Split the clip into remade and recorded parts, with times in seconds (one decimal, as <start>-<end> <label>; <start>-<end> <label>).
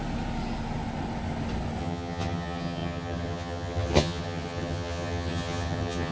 0.0-1.8 recorded; 1.8-6.1 remade